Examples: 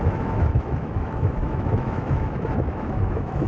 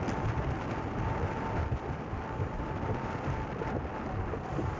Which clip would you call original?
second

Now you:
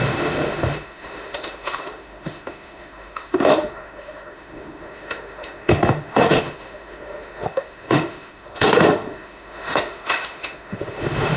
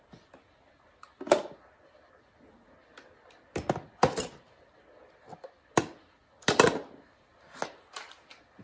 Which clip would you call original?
second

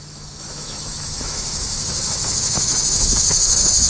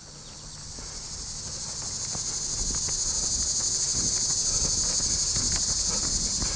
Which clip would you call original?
second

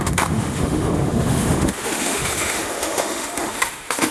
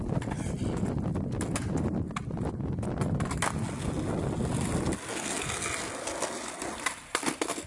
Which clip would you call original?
second